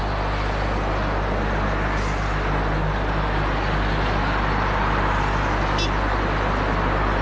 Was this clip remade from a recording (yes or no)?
no